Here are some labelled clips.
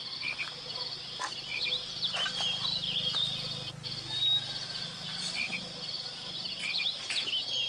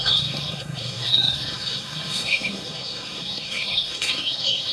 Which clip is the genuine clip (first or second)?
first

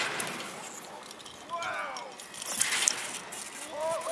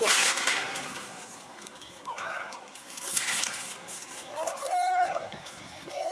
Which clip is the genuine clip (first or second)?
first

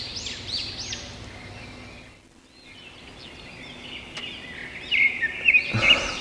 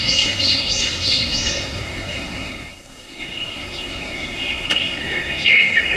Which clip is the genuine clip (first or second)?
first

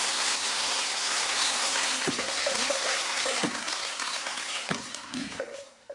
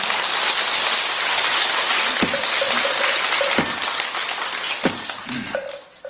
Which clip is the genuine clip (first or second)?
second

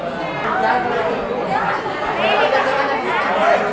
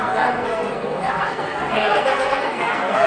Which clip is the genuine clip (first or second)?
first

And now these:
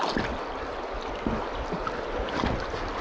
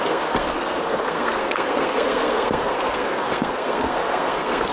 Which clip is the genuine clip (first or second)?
first